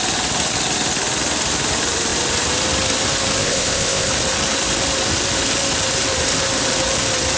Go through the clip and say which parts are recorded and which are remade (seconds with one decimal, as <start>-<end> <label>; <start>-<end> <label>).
0.0-3.4 recorded; 3.4-4.1 remade; 4.1-7.4 recorded